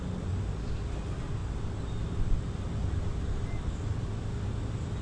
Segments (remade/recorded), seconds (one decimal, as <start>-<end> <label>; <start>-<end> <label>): 0.0-5.0 recorded